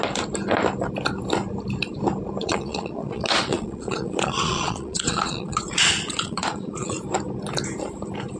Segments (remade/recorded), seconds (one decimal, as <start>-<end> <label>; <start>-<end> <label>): 0.0-2.4 recorded; 2.4-7.0 remade; 7.0-8.4 recorded